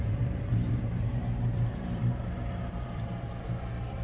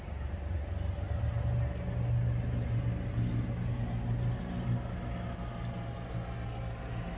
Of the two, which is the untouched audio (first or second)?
second